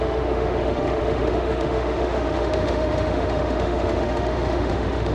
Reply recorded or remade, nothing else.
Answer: remade